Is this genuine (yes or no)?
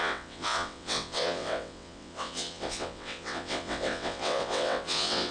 no